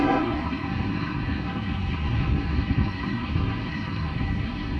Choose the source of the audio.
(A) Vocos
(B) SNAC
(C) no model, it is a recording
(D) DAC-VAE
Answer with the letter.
B